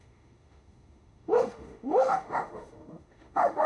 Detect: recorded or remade remade